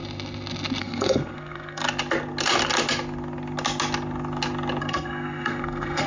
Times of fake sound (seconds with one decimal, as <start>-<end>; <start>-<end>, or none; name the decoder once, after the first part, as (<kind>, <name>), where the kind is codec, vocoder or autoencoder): 0.8-1.8 (codec, SNAC); 4.8-6.1